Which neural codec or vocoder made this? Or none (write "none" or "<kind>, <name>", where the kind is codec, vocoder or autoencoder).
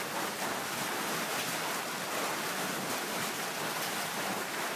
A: none